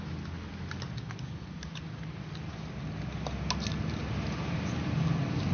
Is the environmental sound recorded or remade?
recorded